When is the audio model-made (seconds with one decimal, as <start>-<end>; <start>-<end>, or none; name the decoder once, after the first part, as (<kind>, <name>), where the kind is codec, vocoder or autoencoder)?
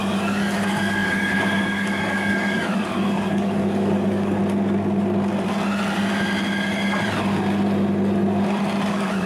0.0-4.4 (codec, DAC); 8.9-9.3